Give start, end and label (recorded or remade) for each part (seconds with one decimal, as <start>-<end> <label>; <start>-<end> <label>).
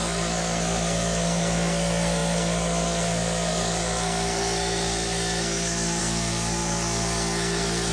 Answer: 0.0-7.9 remade